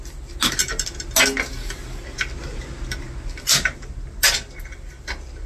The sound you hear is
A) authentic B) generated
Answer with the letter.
A